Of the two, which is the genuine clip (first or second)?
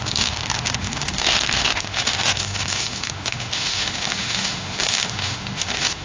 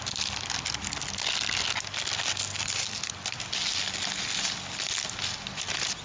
second